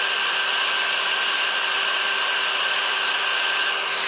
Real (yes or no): yes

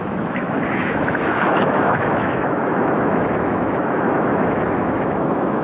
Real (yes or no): no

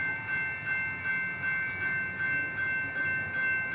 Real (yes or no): yes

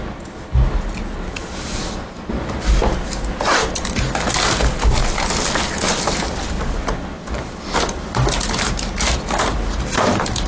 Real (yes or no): yes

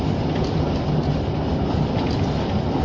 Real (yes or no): yes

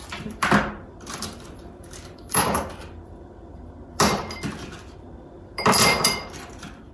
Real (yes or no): no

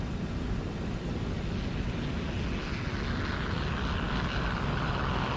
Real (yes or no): yes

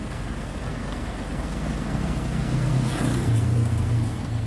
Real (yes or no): no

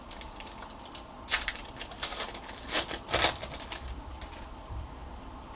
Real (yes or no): no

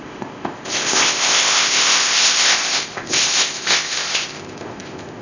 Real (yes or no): no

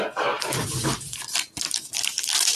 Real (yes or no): yes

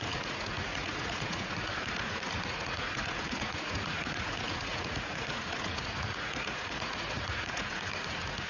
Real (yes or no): no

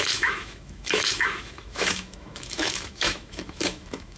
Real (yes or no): no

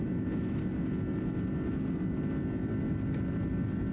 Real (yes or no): yes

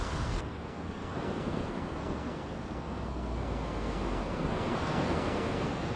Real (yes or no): no